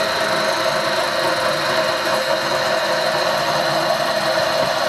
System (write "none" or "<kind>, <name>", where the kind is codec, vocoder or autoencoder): none